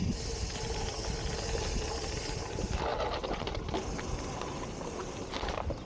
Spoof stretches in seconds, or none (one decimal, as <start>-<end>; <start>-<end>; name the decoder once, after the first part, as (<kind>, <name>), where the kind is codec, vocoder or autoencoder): none